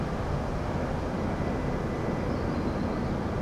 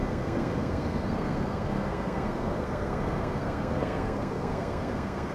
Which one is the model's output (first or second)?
second